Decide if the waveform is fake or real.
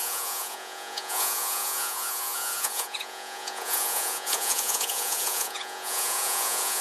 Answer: fake